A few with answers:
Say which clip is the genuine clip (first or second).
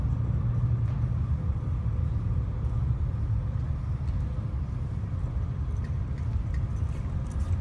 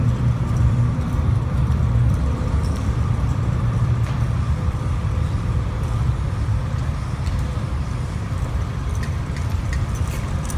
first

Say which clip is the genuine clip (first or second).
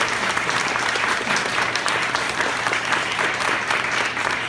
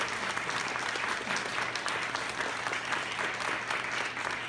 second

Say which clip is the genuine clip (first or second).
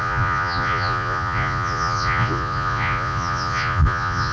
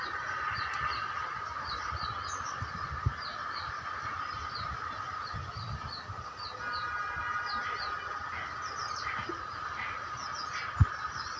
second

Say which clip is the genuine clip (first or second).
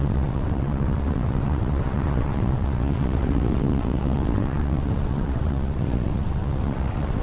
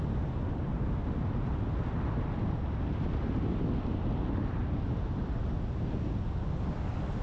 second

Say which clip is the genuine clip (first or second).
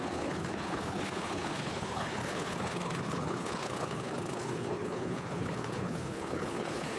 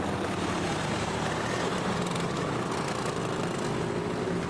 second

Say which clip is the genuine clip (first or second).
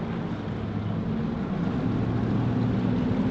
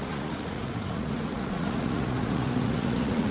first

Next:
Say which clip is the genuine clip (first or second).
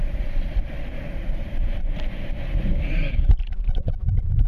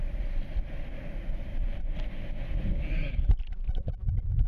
second